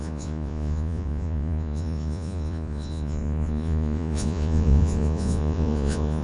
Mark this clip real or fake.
fake